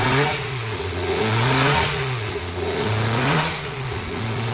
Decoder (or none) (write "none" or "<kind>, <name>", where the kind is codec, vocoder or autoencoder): vocoder, Vocos